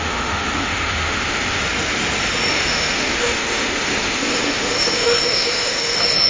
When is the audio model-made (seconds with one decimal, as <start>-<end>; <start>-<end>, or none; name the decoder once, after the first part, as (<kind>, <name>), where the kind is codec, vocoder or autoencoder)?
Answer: 0.0-1.6 (autoencoder, DAC-VAE); 2.5-6.3